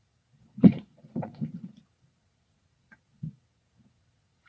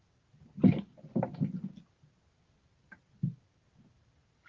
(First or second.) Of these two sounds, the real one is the second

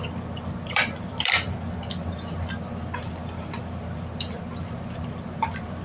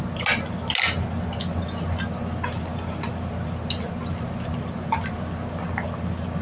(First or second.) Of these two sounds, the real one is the second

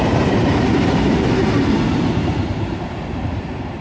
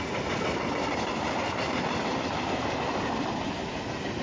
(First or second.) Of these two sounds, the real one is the second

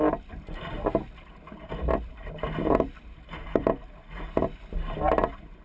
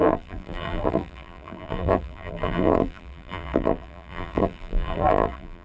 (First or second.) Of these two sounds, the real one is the first